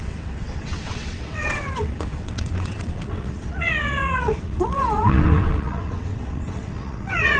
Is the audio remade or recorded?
remade